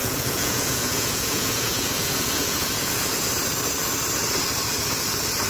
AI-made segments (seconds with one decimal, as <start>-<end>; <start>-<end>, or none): 0.0-3.3